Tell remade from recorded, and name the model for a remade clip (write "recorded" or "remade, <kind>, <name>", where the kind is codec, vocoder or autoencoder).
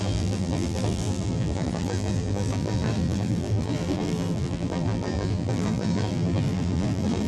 remade, vocoder, BigVGAN v2